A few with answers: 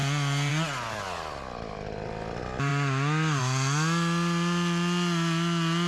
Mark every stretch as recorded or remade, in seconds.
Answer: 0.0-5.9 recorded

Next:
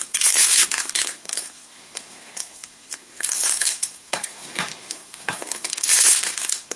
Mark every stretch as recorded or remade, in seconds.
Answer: 0.0-6.8 remade

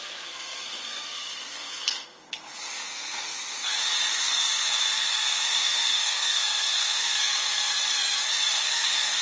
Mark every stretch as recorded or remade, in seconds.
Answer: 0.0-3.7 remade; 3.7-4.2 recorded; 4.2-7.7 remade; 7.7-8.5 recorded; 8.5-9.2 remade

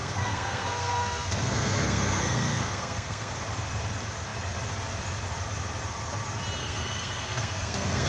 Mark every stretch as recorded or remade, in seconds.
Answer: 0.0-3.3 remade; 3.3-6.6 recorded; 6.6-8.1 remade

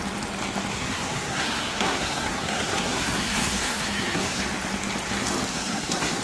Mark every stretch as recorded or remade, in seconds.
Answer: 0.0-0.7 recorded; 0.7-4.4 remade; 4.4-5.5 recorded; 5.5-6.2 remade

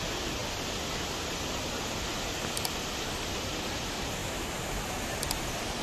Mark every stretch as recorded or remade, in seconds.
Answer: 0.0-5.8 recorded

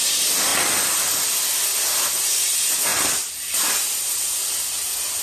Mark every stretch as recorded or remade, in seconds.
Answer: 0.0-5.2 recorded

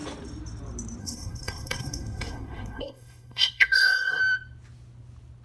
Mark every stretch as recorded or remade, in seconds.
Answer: 0.0-1.0 recorded; 1.0-4.2 remade; 4.2-5.4 recorded